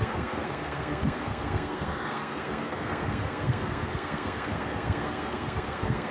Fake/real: fake